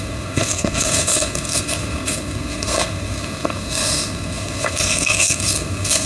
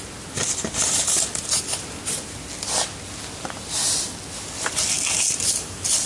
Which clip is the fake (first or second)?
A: first